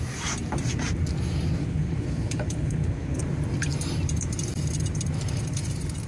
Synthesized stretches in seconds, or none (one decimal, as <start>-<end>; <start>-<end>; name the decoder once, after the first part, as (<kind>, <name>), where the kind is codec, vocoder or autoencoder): 1.6-3.2 (codec, HILCodec)